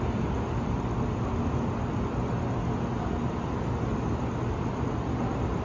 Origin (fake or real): real